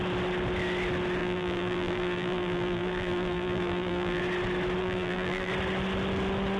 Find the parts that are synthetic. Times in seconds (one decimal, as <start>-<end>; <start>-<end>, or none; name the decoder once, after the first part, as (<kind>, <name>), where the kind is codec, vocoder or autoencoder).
1.2-4.2 (vocoder, BigVGAN v2); 4.8-5.5